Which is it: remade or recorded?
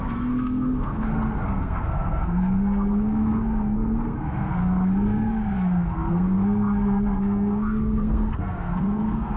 remade